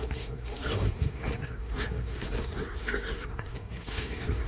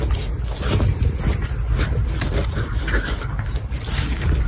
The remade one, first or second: first